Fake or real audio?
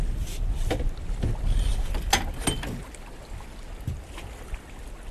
real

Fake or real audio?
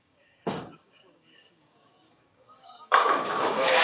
fake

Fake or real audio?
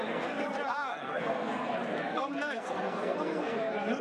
fake